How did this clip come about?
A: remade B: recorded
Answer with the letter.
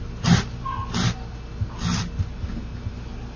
B